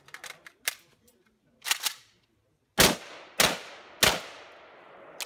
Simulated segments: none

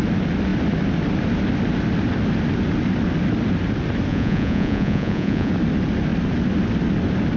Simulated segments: 4.1-5.5 (vocoder, Vocos)

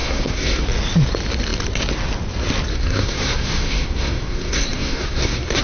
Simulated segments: 0.0-0.6 (codec, SNAC); 2.7-5.6